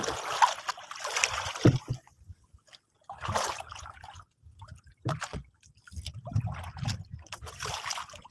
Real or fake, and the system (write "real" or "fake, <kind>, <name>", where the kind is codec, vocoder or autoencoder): real